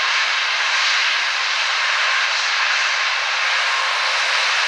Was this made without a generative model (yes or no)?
yes